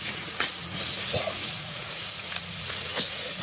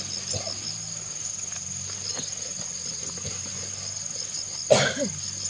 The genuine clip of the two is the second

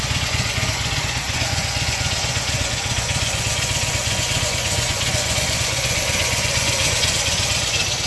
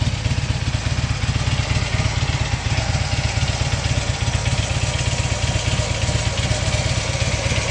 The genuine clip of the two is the second